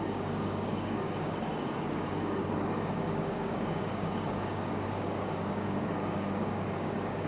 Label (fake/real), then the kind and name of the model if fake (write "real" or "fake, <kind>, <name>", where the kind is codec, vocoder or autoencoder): fake, codec, DAC